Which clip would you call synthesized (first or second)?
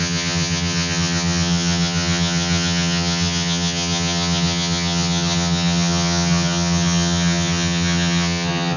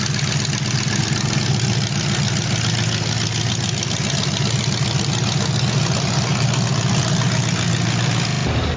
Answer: first